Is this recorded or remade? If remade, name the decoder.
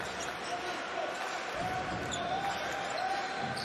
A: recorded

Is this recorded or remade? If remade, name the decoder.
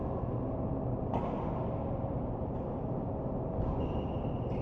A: recorded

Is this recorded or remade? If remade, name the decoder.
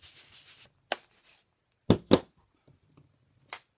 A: recorded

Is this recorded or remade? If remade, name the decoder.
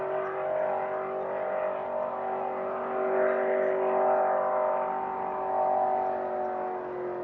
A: recorded